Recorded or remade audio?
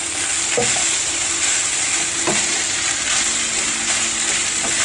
recorded